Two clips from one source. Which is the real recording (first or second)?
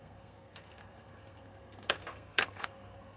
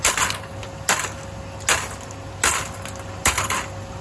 second